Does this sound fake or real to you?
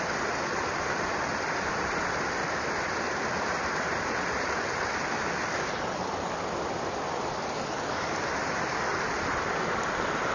real